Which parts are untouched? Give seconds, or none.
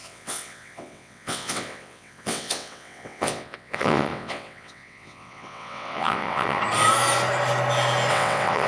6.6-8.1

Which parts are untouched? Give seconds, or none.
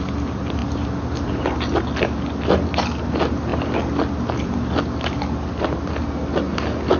0.0-7.0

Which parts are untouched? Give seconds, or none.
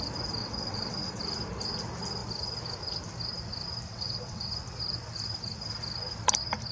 0.0-0.4; 1.2-3.9; 4.5-6.7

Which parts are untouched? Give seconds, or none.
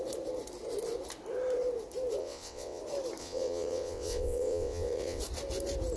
0.0-2.2; 2.8-3.2; 5.2-6.0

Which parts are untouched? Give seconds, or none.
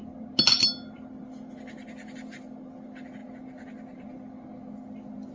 0.0-5.3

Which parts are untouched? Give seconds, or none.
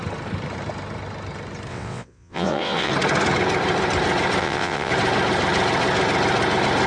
0.0-1.7; 2.9-4.4; 4.9-6.9